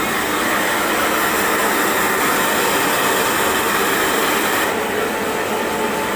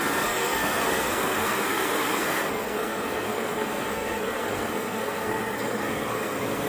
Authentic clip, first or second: first